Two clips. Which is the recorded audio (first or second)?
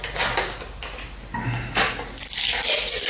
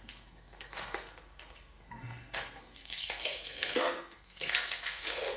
first